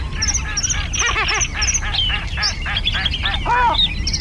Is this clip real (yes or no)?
yes